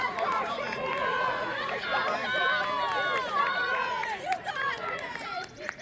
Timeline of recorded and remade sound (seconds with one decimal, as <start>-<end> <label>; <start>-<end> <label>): 0.0-1.9 remade; 1.9-3.4 recorded; 3.4-5.8 remade